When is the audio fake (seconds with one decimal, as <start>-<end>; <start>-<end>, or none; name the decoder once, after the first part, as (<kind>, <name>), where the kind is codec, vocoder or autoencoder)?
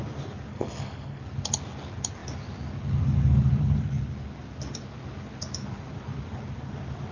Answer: 0.5-1.2 (codec, SNAC)